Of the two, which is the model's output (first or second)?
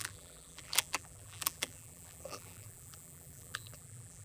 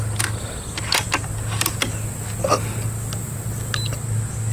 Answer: first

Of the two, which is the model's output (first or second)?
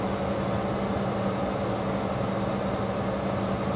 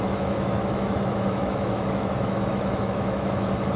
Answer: second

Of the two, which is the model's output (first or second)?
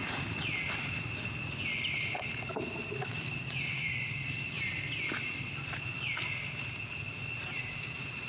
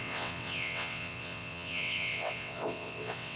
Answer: second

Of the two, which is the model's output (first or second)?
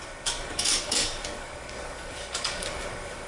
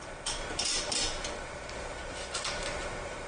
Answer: first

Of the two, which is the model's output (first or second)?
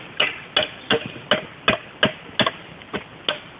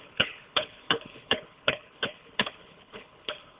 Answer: second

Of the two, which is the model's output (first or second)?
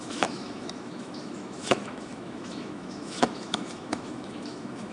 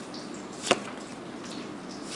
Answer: first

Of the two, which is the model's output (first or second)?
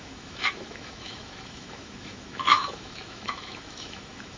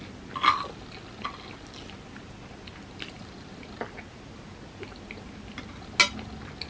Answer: first